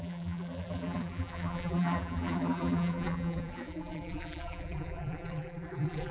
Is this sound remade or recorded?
remade